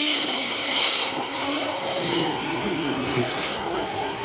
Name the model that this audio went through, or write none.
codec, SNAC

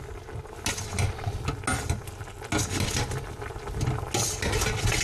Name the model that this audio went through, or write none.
none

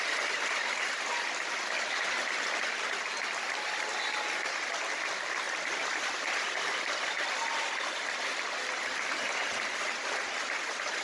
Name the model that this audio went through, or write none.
none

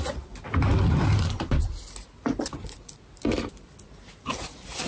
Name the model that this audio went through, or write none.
none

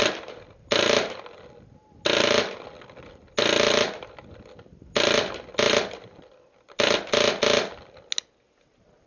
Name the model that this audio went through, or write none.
none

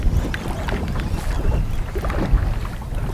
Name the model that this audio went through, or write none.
none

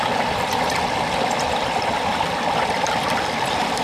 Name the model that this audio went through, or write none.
none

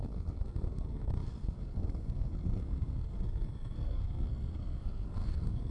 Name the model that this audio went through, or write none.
codec, SNAC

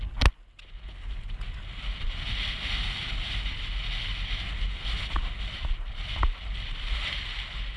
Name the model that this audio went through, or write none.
none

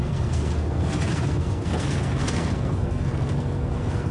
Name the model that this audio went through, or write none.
codec, SNAC